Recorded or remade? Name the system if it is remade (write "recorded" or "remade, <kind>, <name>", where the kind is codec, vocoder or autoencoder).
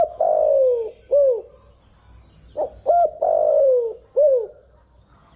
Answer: recorded